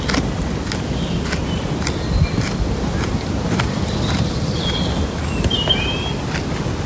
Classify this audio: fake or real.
real